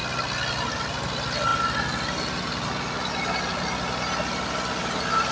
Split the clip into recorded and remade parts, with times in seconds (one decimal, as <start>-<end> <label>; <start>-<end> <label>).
0.0-5.3 recorded